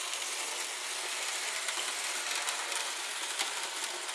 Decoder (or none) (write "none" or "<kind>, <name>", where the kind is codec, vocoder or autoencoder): none